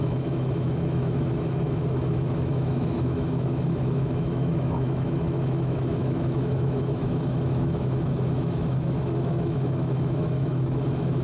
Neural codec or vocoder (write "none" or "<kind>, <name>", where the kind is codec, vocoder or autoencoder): autoencoder, DAC-VAE